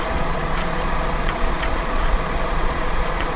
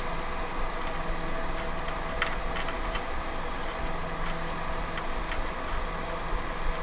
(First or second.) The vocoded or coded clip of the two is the first